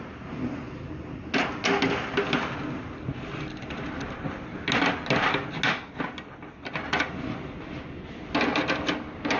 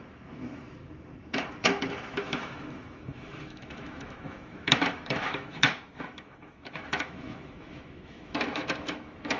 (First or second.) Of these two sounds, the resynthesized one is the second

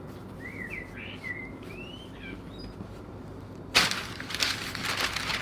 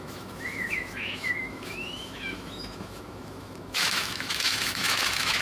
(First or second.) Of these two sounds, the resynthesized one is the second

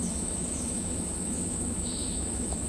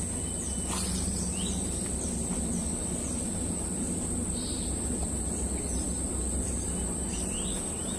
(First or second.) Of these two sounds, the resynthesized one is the first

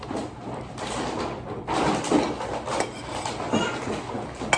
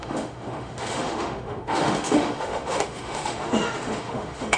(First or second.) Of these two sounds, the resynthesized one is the second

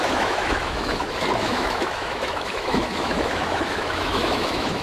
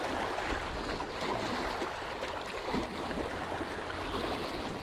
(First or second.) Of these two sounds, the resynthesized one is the first